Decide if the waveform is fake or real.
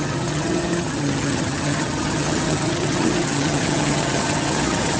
fake